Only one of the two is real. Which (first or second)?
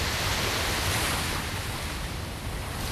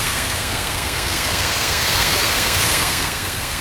first